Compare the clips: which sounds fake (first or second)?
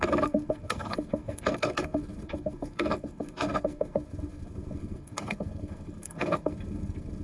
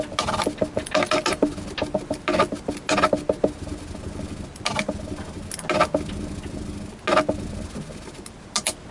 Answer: first